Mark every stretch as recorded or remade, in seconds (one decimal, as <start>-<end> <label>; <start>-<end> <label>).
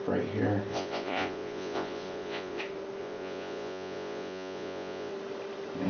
0.0-0.7 recorded; 0.7-2.6 remade; 2.6-3.0 recorded; 3.0-5.1 remade; 5.1-5.9 recorded